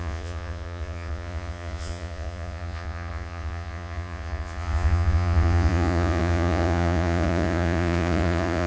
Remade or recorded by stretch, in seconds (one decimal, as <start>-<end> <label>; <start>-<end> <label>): 0.0-8.7 remade